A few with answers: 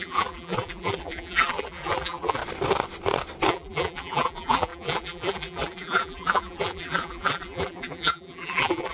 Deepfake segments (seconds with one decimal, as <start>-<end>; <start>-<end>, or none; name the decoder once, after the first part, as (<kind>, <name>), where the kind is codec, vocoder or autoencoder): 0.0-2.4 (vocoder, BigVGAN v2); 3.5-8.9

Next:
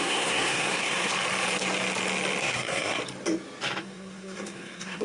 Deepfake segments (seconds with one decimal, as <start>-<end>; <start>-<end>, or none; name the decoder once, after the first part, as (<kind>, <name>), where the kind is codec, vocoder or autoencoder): 0.0-1.1 (codec, SNAC); 2.4-3.0; 3.8-5.0

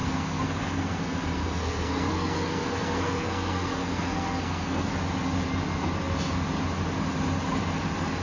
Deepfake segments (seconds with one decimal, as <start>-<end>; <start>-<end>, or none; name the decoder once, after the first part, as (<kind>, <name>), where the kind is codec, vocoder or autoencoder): 0.0-4.9 (codec, SNAC)

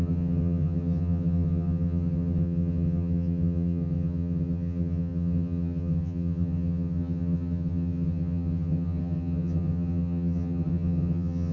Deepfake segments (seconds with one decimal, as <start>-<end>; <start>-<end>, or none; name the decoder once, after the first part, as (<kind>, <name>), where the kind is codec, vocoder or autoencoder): 0.0-11.5 (vocoder, HiFi-GAN)

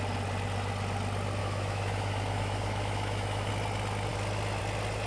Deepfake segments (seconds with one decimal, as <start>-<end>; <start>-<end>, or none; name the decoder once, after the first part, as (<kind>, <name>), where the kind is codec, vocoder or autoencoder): 1.4-3.5 (autoencoder, DAC-VAE)

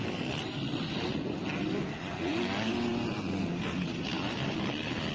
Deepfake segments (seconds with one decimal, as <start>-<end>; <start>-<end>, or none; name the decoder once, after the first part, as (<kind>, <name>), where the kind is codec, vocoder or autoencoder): 4.1-5.1 (vocoder, BigVGAN v2)